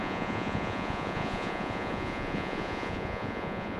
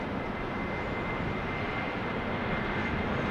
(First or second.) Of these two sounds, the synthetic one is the first